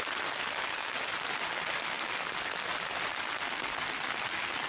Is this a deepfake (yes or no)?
no